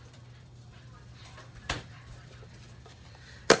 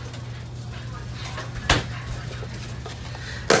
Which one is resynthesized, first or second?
first